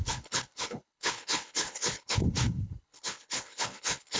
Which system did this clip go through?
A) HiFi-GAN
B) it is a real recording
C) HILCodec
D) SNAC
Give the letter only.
C